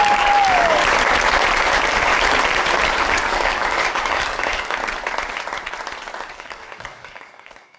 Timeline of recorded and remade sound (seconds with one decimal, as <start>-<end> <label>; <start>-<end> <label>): 0.0-0.8 remade; 0.8-1.7 recorded; 1.7-2.1 remade; 2.1-3.0 recorded; 3.0-4.8 remade; 4.8-6.3 recorded; 6.3-7.8 remade